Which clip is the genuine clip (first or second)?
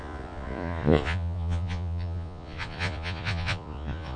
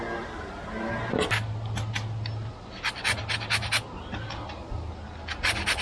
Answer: second